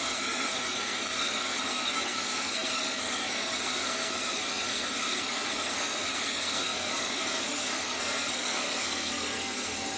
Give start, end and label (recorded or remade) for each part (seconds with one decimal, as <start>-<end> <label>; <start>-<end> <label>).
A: 0.0-10.0 remade